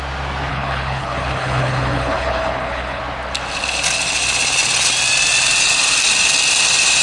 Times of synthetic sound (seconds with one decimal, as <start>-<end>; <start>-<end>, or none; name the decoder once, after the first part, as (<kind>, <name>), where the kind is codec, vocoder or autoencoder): 0.5-3.0 (codec, HILCodec)